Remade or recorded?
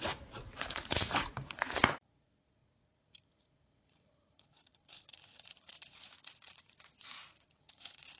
remade